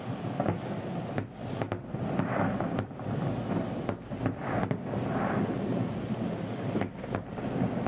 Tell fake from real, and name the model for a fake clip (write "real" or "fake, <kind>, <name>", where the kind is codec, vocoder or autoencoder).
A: real